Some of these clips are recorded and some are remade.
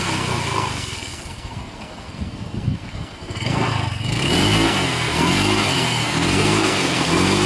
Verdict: remade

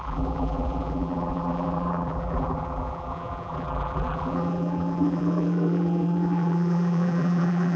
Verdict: remade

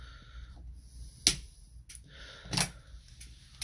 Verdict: recorded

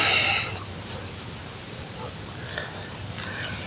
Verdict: remade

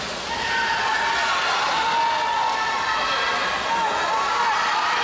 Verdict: recorded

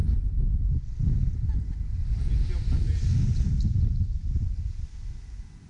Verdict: recorded